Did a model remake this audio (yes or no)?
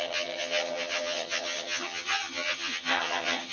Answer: yes